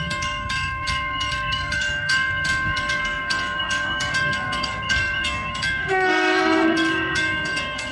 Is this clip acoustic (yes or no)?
no